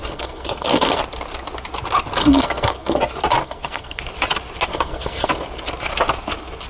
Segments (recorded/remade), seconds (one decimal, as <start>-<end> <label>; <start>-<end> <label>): 0.0-1.0 remade; 1.0-2.2 recorded; 2.2-3.0 remade; 3.0-3.4 recorded; 3.4-4.0 remade; 4.0-4.7 recorded; 4.7-5.3 remade; 5.3-6.7 recorded